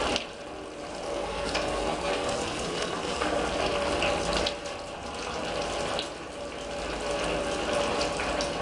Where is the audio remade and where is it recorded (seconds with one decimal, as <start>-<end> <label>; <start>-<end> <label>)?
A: 0.0-1.1 recorded; 1.1-3.4 remade; 3.4-8.6 recorded